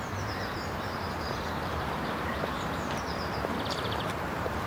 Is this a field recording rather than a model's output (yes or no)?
no